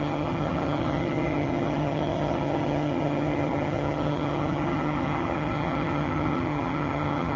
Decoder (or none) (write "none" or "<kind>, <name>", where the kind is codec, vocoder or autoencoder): vocoder, HiFi-GAN